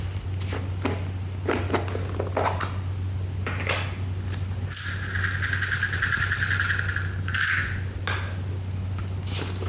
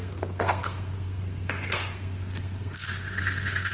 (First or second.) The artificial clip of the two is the second